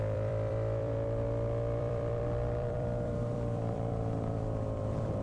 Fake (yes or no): yes